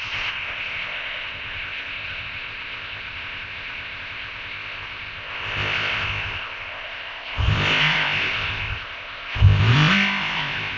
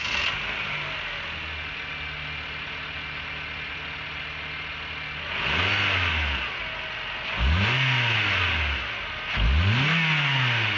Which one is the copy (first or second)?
first